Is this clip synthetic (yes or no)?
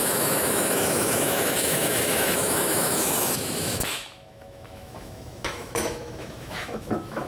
yes